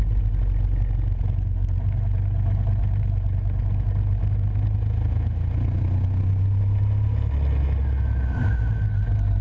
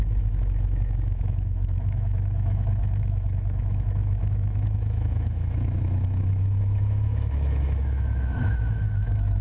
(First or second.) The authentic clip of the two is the first